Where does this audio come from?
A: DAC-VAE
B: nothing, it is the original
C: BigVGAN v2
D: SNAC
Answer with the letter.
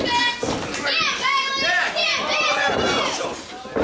B